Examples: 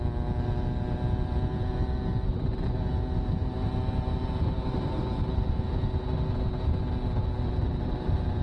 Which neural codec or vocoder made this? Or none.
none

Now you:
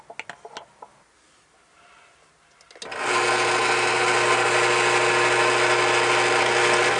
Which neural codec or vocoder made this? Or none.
none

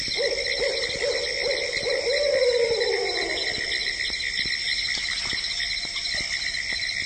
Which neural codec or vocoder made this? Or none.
none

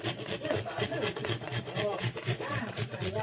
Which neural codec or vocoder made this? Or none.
vocoder, Vocos